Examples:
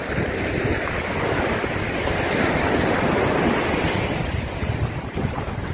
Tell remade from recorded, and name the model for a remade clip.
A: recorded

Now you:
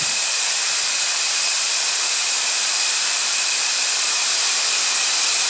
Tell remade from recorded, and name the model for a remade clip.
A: remade, vocoder, BigVGAN v2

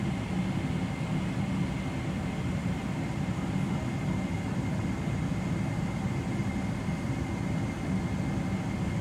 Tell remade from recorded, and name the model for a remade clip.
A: recorded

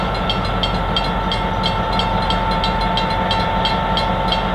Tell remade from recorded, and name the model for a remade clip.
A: recorded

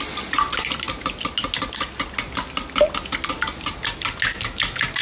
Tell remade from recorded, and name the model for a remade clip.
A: recorded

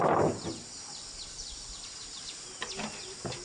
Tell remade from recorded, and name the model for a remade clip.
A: recorded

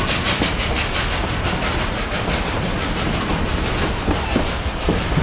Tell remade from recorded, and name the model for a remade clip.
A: recorded